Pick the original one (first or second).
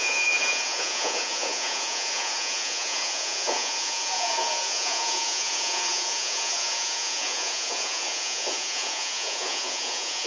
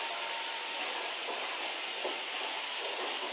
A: second